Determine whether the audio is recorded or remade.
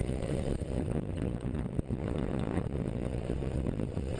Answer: remade